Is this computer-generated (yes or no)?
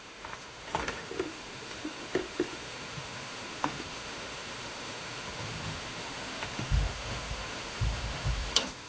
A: yes